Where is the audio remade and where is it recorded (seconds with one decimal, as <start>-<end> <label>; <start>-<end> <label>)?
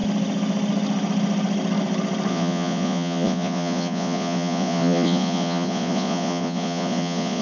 0.0-2.3 recorded; 2.3-7.4 remade